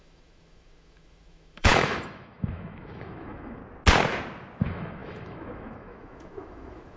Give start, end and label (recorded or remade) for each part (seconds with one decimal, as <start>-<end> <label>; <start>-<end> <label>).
0.0-3.6 remade; 3.6-4.6 recorded; 4.6-7.0 remade

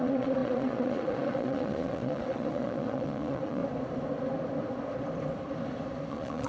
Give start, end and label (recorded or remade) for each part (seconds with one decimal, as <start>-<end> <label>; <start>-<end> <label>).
0.0-3.6 remade; 3.6-6.1 recorded; 6.1-6.5 remade

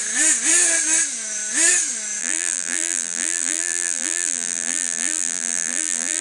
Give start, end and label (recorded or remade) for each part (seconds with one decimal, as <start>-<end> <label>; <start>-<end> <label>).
0.0-2.2 recorded; 2.2-6.2 remade